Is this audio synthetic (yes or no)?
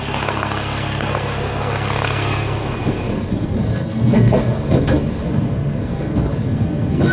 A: yes